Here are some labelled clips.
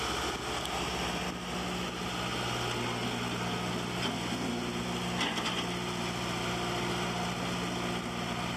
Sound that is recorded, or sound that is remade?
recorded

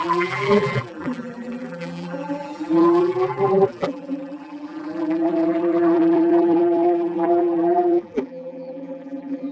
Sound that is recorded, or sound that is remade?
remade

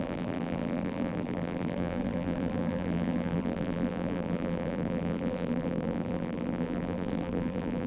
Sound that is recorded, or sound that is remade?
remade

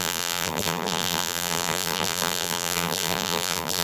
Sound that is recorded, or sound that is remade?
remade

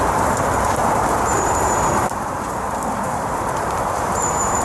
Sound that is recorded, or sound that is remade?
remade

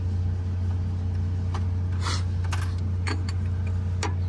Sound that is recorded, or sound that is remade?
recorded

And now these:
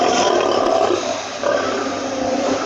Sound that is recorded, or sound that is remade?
remade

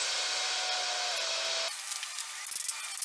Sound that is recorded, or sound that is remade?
recorded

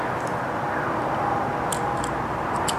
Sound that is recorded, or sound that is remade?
recorded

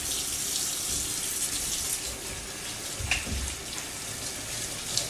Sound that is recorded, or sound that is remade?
recorded